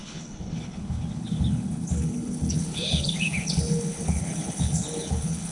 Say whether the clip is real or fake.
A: fake